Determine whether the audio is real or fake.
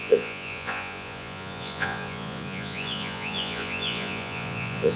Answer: fake